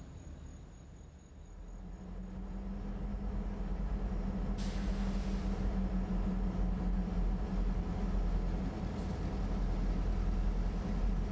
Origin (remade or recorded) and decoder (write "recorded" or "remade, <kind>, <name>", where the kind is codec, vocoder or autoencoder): recorded